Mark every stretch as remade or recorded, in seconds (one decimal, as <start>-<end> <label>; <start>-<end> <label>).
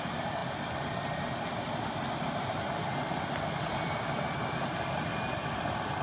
0.0-6.0 recorded